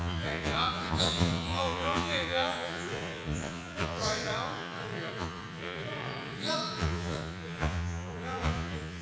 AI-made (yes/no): yes